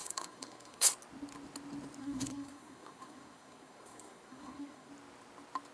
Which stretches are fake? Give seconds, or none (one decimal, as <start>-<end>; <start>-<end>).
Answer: 0.0-0.9; 2.0-4.9